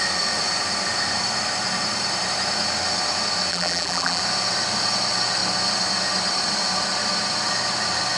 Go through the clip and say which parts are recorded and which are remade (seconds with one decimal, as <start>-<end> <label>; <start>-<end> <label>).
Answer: 0.0-3.5 recorded; 3.5-4.2 remade; 4.2-8.2 recorded